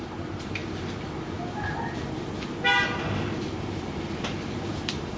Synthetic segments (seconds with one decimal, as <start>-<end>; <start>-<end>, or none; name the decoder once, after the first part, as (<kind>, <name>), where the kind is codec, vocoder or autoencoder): 0.0-0.6 (vocoder, BigVGAN v2); 3.7-5.2